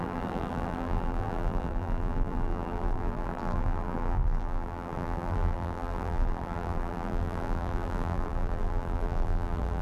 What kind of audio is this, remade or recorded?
remade